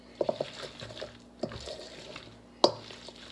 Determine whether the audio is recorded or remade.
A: recorded